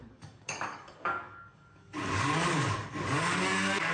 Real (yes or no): no